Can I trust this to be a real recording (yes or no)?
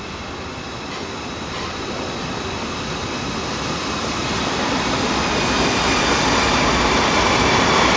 yes